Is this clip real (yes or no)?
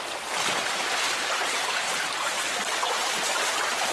yes